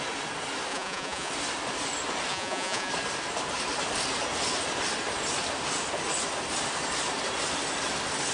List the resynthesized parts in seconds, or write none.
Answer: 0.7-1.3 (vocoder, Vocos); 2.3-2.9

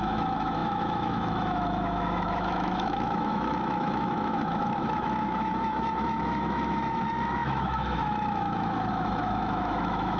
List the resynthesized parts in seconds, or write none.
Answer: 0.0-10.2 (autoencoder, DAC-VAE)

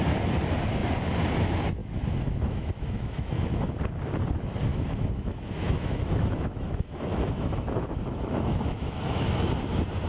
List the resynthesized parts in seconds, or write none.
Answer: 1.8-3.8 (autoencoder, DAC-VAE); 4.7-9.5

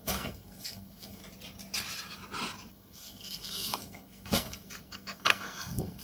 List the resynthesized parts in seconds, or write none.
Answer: 0.0-1.2 (codec, SNAC); 2.7-6.0

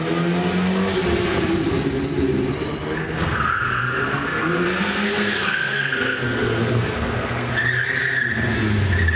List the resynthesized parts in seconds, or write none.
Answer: 3.0-7.5 (codec, SNAC)